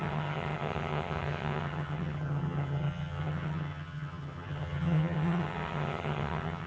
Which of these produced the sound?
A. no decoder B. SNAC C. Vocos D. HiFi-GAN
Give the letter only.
D